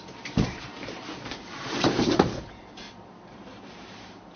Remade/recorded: remade